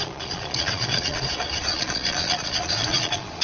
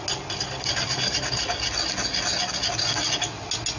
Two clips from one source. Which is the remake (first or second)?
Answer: first